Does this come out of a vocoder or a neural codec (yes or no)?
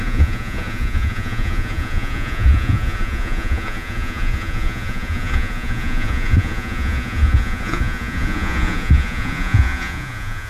yes